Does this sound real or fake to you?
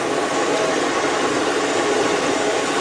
real